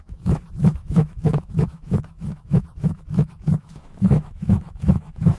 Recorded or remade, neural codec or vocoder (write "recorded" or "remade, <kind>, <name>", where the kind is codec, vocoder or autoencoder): remade, autoencoder, DAC-VAE